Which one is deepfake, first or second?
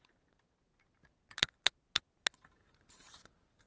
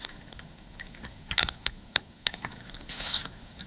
second